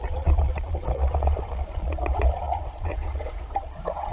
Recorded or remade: remade